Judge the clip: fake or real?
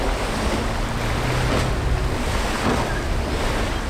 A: real